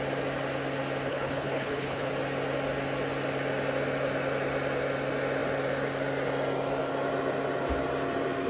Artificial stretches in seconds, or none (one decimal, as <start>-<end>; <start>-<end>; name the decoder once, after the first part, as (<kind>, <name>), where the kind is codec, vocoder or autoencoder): 1.1-2.1 (codec, HILCodec)